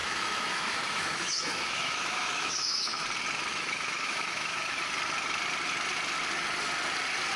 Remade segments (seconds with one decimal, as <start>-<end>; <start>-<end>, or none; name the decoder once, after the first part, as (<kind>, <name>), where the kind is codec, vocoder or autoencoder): 0.0-3.0 (autoencoder, DAC-VAE); 3.5-4.9